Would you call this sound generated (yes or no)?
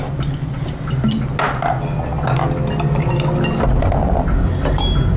no